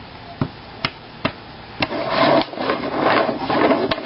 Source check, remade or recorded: recorded